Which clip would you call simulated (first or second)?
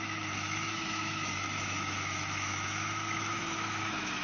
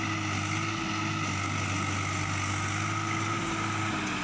first